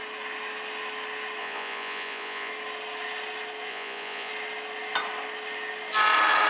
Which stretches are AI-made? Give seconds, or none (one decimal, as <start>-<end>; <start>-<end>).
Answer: 1.4-2.5; 3.7-4.3